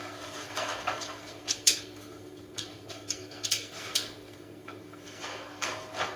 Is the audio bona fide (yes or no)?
no